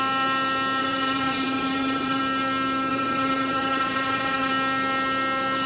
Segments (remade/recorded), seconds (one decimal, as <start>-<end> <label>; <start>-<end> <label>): 0.0-0.8 recorded; 0.8-2.2 remade; 2.2-2.9 recorded; 2.9-4.5 remade; 4.5-5.7 recorded